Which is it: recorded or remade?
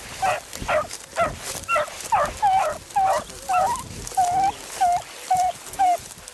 recorded